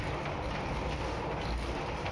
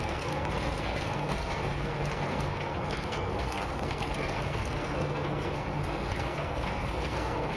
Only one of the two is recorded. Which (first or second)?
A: first